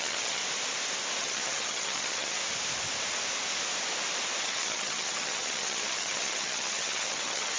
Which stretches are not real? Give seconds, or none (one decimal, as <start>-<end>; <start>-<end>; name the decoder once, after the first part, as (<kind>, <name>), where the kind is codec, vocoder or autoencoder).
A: 0.0-0.4 (vocoder, HiFi-GAN); 1.2-2.4; 4.4-7.6